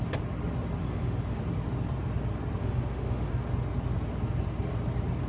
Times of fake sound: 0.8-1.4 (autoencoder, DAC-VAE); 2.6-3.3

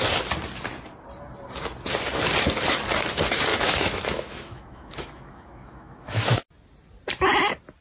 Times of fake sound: 3.5-6.4 (autoencoder, DAC-VAE)

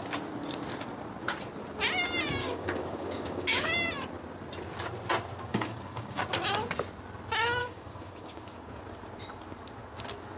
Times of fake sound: 2.4-3.7 (codec, DAC); 5.5-6.2; 7.6-8.8

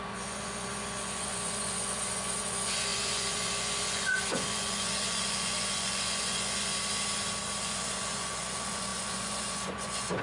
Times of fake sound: 0.0-6.7 (vocoder, Vocos); 7.6-10.2

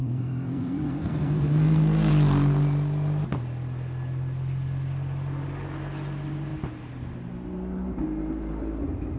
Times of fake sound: 0.0-2.1 (codec, SNAC)